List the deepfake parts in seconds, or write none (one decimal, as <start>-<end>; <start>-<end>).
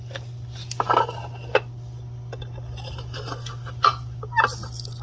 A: none